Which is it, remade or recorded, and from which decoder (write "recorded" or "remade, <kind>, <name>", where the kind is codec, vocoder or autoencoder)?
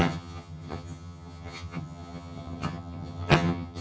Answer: remade, vocoder, HiFi-GAN